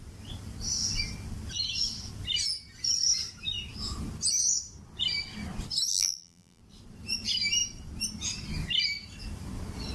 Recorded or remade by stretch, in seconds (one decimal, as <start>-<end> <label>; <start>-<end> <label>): 0.0-5.9 recorded; 5.9-6.6 remade; 6.6-9.9 recorded